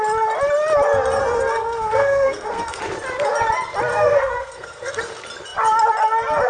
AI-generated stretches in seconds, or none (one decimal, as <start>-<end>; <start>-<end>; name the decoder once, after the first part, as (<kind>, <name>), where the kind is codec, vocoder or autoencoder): 1.2-2.8 (codec, SNAC); 3.9-5.0